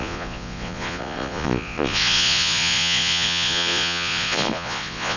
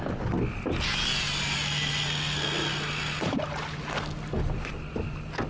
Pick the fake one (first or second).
first